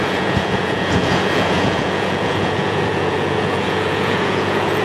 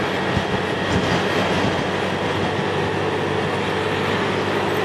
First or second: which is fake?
first